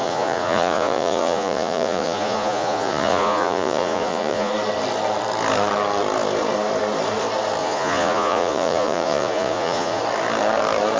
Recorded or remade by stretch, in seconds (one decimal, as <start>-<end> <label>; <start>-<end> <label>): 0.0-4.5 remade; 4.5-7.6 recorded; 7.6-10.0 remade; 10.0-11.0 recorded